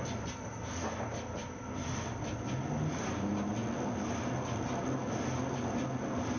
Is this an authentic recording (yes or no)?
yes